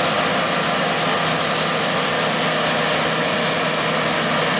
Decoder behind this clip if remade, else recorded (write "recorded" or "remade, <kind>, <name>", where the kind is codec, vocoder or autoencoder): recorded